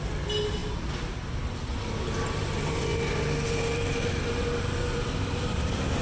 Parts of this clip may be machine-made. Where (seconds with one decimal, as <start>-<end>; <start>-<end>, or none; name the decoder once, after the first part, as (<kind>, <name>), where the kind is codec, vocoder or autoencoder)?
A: none